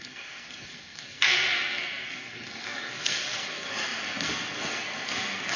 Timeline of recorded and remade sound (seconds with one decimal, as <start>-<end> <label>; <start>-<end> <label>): 0.0-5.6 remade